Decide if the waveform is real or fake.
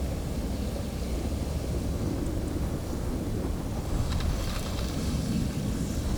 real